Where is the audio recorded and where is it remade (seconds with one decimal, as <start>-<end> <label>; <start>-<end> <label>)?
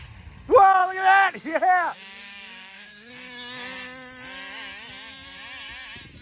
0.0-0.8 recorded; 0.8-3.1 remade; 3.1-6.2 recorded